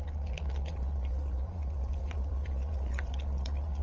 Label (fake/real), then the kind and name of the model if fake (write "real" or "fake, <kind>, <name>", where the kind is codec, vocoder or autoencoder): fake, vocoder, Vocos